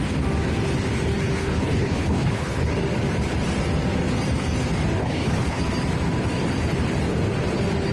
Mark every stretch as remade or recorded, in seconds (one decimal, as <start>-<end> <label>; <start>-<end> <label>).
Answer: 0.0-1.4 recorded; 1.4-2.7 remade; 2.7-5.0 recorded; 5.0-5.6 remade; 5.6-7.9 recorded